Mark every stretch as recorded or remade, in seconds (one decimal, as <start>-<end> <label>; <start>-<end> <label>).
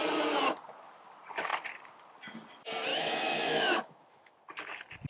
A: 0.0-2.9 recorded; 2.9-4.3 remade; 4.3-5.1 recorded